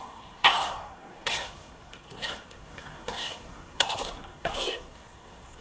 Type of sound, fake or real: fake